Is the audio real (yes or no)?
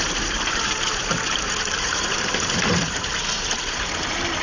no